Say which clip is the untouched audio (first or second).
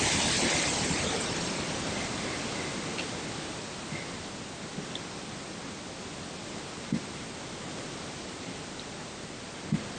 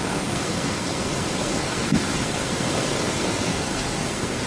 first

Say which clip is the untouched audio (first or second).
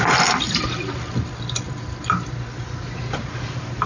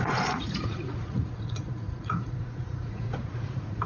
first